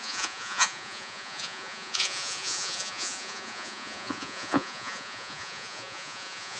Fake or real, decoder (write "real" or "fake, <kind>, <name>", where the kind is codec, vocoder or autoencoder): fake, vocoder, Vocos